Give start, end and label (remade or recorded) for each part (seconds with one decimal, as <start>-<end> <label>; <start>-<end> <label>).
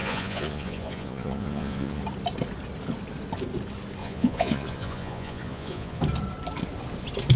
0.0-2.0 remade; 2.0-4.0 recorded; 4.0-6.0 remade; 6.0-7.4 recorded